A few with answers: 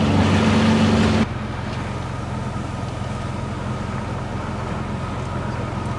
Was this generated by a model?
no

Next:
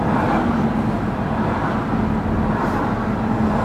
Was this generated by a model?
no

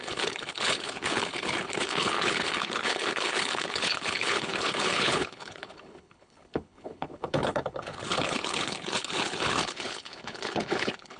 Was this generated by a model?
yes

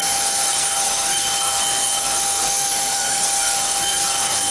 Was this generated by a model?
yes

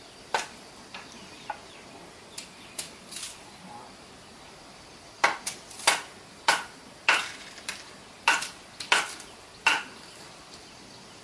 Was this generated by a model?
no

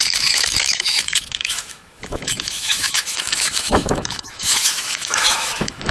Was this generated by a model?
yes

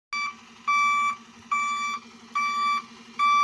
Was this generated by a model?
no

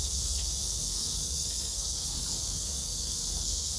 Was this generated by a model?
yes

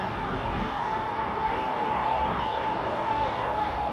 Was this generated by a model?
yes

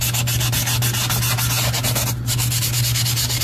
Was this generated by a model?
no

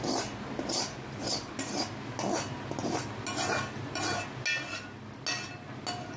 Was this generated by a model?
no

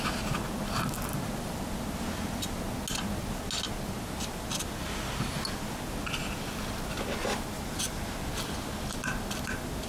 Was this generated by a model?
no